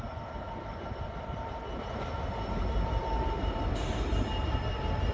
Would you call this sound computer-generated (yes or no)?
yes